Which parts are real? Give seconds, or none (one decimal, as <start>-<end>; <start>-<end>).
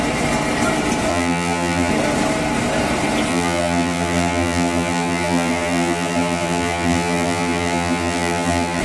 0.0-1.1; 1.9-3.3